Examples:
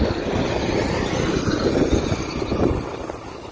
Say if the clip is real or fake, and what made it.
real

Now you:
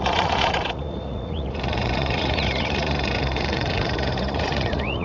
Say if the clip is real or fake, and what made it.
fake, vocoder, Vocos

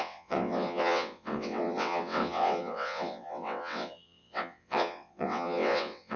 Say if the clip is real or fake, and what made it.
fake, vocoder, WaveNeXt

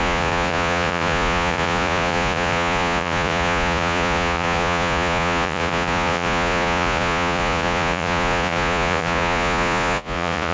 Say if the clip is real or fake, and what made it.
fake, vocoder, Vocos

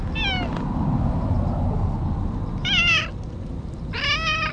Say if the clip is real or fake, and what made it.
real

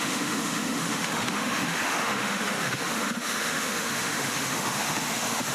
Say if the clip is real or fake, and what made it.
fake, autoencoder, DAC-VAE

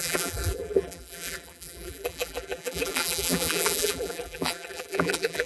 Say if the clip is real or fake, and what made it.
fake, vocoder, BigVGAN v2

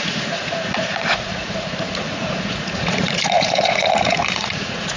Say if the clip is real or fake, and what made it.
fake, vocoder, Vocos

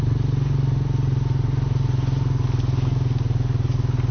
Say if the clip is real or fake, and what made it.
real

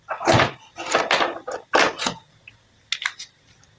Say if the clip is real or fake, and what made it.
real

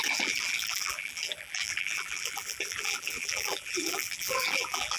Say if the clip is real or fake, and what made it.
fake, vocoder, BigVGAN v2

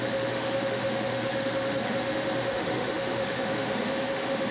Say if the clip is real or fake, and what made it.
fake, autoencoder, DAC-VAE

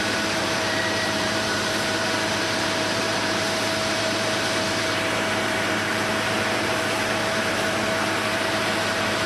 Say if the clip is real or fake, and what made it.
fake, vocoder, BigVGAN v2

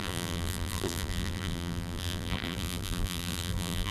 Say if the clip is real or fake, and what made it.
fake, vocoder, BigVGAN v2